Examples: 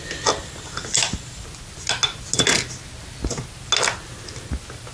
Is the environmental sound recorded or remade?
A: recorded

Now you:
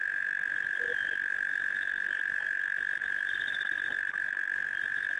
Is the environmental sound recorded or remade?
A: recorded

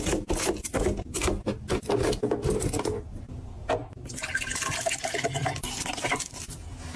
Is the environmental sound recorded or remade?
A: recorded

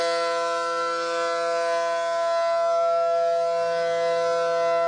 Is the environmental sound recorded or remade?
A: recorded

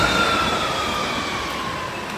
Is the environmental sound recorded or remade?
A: recorded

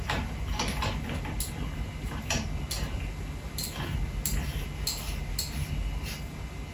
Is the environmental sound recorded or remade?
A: recorded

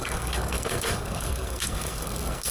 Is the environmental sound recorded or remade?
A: remade